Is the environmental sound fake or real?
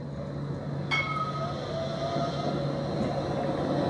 real